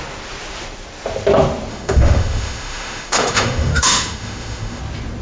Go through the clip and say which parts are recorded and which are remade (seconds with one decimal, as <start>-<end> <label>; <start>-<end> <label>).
0.0-1.7 recorded; 1.7-4.8 remade; 4.8-5.2 recorded